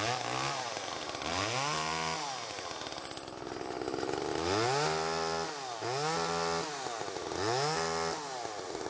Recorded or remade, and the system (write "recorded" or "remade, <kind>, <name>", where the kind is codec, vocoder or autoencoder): recorded